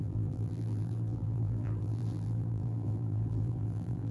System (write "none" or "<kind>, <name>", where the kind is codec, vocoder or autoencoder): vocoder, BigVGAN v2